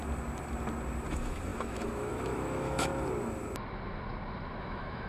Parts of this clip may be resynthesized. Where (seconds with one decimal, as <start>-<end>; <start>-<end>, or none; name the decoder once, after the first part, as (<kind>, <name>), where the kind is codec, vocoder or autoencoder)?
1.1-2.9 (autoencoder, DAC-VAE); 4.6-5.1